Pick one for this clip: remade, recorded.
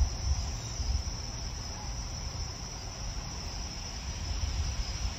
recorded